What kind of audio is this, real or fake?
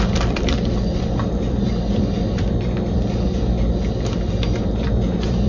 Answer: fake